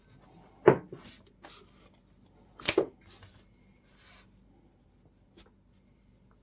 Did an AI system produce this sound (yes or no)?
no